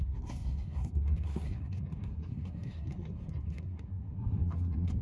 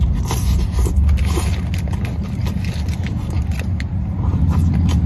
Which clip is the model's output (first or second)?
first